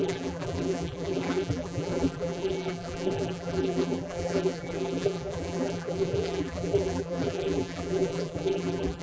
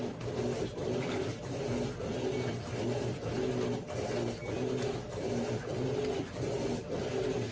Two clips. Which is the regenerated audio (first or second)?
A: first